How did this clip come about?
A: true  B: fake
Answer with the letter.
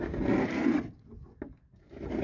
A